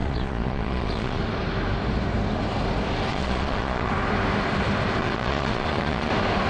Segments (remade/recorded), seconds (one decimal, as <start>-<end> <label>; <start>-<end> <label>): 0.0-1.2 remade; 1.2-3.1 recorded; 3.1-3.9 remade; 3.9-5.0 recorded; 5.0-6.1 remade; 6.1-6.5 recorded

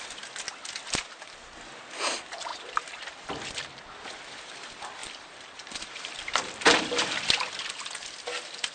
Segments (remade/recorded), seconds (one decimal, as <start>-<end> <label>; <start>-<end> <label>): 0.0-2.5 recorded; 2.5-3.3 remade; 3.3-5.0 recorded; 5.0-7.2 remade; 7.2-8.7 recorded

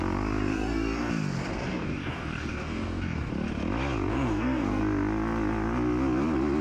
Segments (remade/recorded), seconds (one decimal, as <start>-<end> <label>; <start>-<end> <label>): 0.0-0.4 recorded; 0.4-1.1 remade; 1.1-1.7 recorded; 1.7-3.3 remade; 3.3-4.1 recorded; 4.1-4.8 remade; 4.8-6.6 recorded

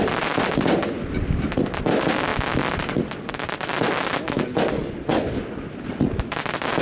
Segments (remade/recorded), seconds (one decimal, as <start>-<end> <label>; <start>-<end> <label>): 0.0-6.8 recorded